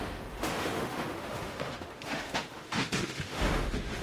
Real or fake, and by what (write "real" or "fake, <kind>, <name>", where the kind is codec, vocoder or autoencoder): fake, autoencoder, DAC-VAE